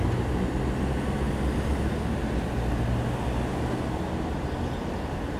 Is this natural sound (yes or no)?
yes